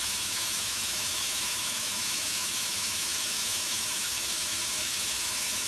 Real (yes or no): no